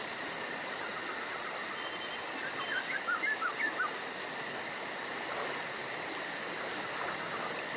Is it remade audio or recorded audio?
recorded